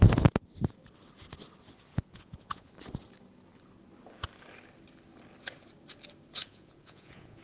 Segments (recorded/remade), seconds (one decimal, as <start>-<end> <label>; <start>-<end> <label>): 0.0-1.9 recorded; 1.9-2.7 remade; 2.7-6.4 recorded; 6.4-7.4 remade